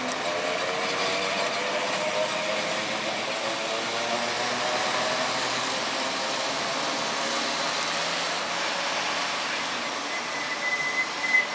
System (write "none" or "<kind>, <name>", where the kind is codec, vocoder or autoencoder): none